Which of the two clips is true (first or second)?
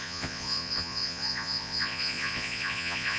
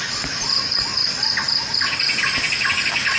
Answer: second